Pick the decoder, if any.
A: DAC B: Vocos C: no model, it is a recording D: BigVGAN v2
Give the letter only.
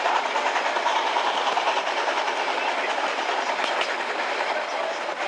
C